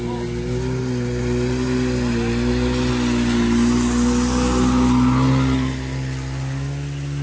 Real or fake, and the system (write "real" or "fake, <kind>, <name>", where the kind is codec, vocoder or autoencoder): real